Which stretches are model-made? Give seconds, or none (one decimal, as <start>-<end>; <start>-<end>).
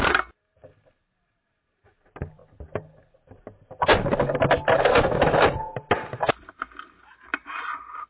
0.0-2.4; 6.4-8.1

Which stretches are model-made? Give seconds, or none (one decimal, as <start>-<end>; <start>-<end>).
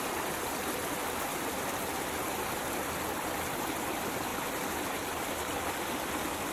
none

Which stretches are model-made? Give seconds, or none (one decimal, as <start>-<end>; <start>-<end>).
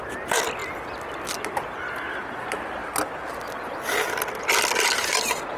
none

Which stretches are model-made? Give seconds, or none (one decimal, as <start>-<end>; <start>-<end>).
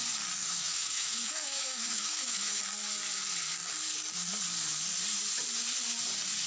0.4-2.6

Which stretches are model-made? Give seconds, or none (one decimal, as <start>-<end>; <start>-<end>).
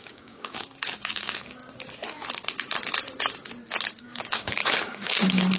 0.0-1.6; 4.0-5.6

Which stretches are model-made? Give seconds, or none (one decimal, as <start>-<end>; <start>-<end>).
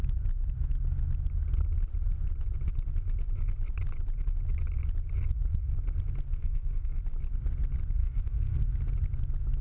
6.4-7.0; 8.0-8.6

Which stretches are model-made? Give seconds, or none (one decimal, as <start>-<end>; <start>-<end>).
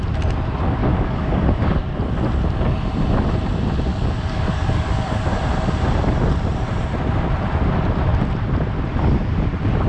0.8-1.8; 3.9-5.4